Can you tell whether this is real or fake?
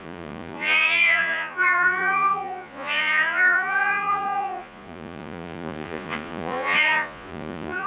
fake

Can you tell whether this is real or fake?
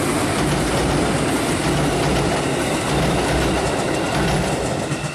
real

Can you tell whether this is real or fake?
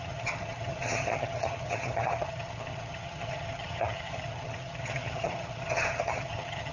fake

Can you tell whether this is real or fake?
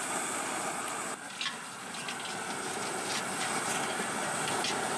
real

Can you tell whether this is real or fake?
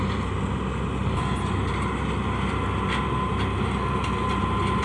real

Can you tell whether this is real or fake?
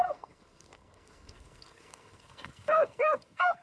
fake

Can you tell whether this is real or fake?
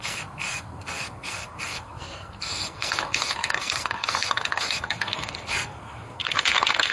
fake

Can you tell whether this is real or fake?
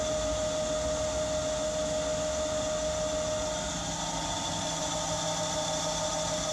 real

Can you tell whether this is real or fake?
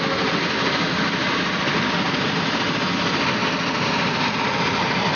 real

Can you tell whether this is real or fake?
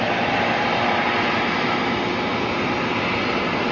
real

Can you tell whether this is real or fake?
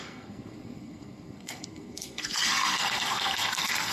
fake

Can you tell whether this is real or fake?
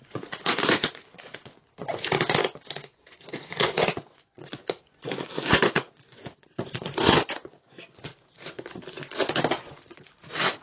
fake